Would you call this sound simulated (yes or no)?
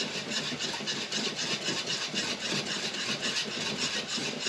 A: no